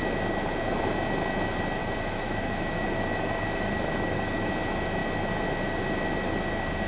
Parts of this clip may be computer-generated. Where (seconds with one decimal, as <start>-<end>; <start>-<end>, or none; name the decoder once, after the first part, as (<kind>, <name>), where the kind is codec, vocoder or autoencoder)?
1.8-4.5 (autoencoder, DAC-VAE)